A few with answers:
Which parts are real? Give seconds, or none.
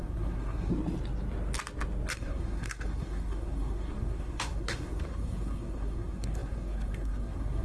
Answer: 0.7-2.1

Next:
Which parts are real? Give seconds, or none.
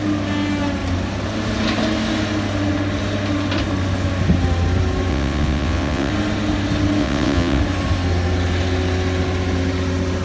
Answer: 0.0-5.1; 6.1-7.0; 7.6-10.2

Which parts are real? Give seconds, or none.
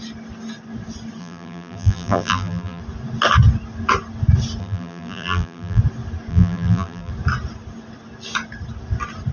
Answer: 0.0-1.2; 2.8-4.6; 5.8-6.3; 7.1-9.3